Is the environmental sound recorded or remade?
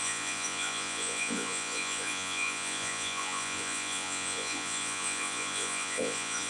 remade